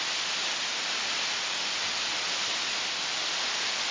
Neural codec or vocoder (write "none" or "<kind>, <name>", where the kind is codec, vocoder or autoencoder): none